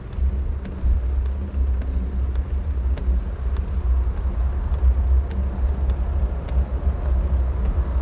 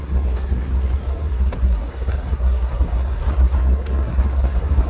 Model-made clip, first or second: second